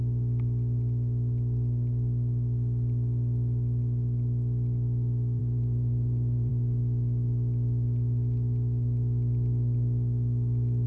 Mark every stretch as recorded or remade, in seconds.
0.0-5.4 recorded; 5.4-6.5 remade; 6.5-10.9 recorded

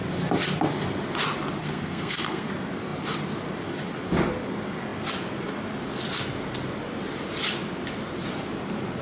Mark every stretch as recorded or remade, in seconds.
0.0-1.6 recorded; 1.6-2.5 remade; 2.5-9.0 recorded

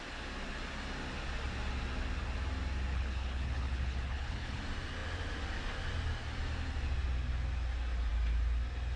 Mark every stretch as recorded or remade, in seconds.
0.0-2.9 recorded; 2.9-4.6 remade; 4.6-9.0 recorded

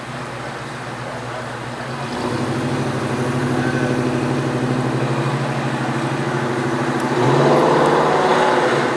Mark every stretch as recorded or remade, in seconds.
0.0-9.0 recorded

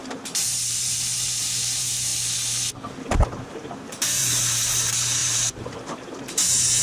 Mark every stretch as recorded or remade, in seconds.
0.0-2.1 remade; 2.1-3.4 recorded; 3.4-6.8 remade

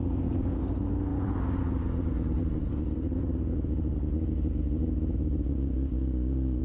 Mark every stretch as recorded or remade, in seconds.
0.0-6.6 recorded

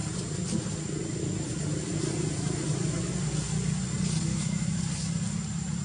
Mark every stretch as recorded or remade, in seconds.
0.0-4.3 recorded; 4.3-4.8 remade; 4.8-5.8 recorded

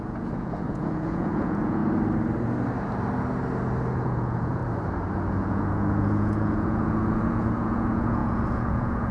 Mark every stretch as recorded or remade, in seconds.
0.0-1.8 remade; 1.8-4.0 recorded; 4.0-4.6 remade; 4.6-5.3 recorded; 5.3-9.1 remade